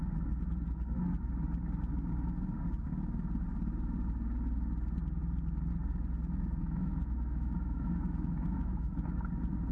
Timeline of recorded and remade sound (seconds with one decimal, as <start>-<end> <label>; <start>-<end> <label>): 0.0-6.6 recorded; 6.6-8.9 remade; 8.9-9.7 recorded